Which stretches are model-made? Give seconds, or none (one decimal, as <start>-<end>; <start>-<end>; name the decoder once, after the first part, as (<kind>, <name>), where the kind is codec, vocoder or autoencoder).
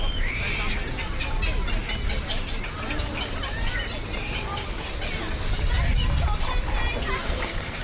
7.2-7.8 (codec, SNAC)